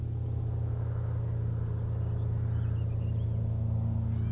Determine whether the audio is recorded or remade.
recorded